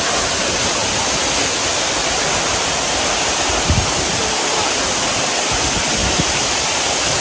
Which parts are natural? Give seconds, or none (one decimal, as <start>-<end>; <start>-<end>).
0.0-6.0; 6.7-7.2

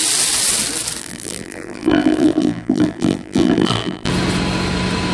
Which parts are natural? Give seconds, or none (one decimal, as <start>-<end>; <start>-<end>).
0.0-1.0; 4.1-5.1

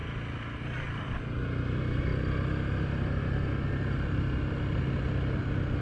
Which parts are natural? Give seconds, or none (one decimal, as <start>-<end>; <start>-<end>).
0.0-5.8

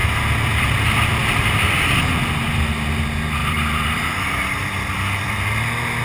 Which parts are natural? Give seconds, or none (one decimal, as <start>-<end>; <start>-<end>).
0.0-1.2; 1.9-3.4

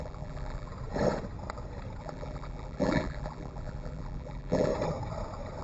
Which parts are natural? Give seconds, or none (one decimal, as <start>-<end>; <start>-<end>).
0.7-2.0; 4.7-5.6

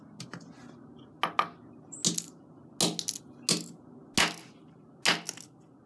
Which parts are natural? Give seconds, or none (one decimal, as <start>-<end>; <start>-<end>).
0.0-5.9

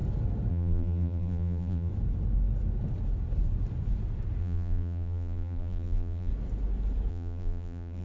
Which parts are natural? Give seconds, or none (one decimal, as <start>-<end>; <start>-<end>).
0.0-0.5; 1.9-4.4; 6.3-7.1